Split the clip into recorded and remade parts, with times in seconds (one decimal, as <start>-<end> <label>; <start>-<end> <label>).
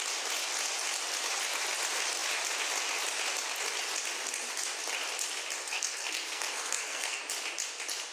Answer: 0.0-5.6 recorded; 5.6-7.2 remade; 7.2-8.1 recorded